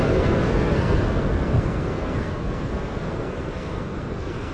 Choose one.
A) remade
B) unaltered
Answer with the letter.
A